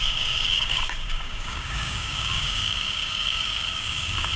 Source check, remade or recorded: remade